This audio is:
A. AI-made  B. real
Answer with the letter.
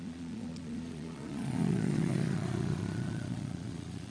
A